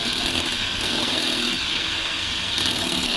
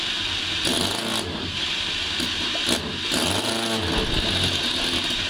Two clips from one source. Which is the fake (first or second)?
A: first